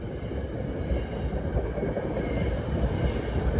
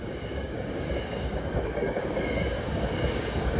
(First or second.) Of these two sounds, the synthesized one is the second